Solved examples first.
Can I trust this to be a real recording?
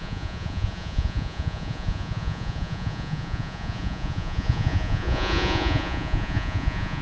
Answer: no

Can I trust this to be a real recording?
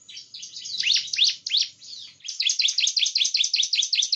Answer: yes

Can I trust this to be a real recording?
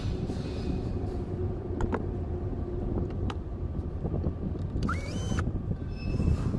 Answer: no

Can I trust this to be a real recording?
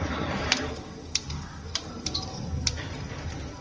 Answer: no